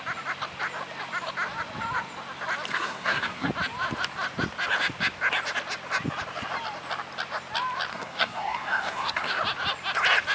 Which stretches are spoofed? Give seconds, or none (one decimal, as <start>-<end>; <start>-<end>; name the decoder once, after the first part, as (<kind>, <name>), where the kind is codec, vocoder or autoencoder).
2.7-3.5 (codec, SNAC); 7.9-9.4